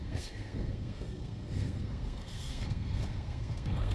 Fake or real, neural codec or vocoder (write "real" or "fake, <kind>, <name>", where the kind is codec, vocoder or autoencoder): fake, codec, SNAC